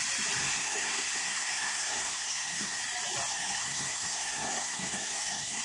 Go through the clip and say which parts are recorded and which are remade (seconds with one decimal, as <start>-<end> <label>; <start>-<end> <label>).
0.0-0.4 recorded; 0.4-2.8 remade; 2.8-3.3 recorded; 3.3-5.6 remade